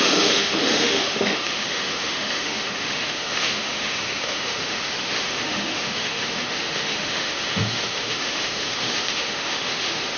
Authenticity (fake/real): fake